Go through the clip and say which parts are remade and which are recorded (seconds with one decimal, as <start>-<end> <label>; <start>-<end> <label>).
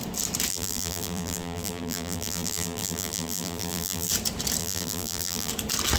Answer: 0.0-0.5 recorded; 0.5-4.1 remade; 4.1-4.6 recorded; 4.6-5.5 remade; 5.5-6.0 recorded